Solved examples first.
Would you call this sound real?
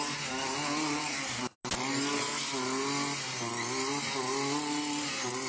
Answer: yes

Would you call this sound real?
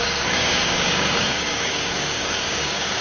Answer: no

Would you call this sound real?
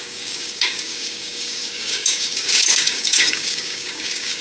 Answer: no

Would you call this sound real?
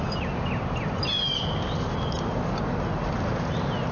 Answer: yes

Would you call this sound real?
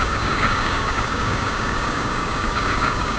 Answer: no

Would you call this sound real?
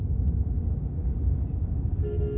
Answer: no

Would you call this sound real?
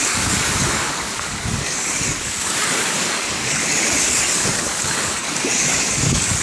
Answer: no